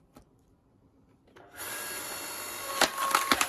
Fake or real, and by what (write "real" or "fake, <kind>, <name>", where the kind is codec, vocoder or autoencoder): real